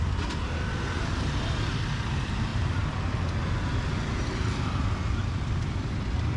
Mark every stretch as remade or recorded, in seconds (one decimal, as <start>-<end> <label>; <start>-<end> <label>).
0.0-1.0 recorded; 1.0-1.7 remade; 1.7-2.5 recorded; 2.5-3.3 remade; 3.3-6.4 recorded